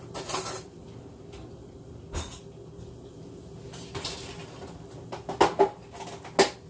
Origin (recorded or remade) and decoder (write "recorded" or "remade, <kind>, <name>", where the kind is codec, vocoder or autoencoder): recorded